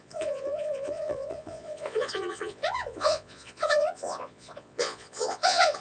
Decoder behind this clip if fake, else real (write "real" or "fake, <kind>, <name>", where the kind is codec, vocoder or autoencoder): fake, vocoder, Vocos